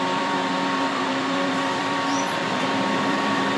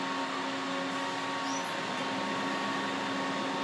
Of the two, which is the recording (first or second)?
second